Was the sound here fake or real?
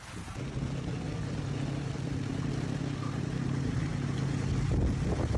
real